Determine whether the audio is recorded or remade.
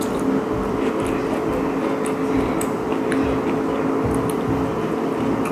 recorded